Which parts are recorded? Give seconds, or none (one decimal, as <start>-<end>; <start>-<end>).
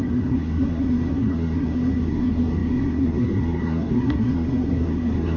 none